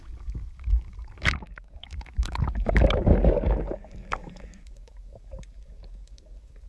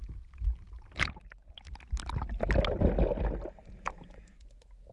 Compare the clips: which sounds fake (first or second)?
first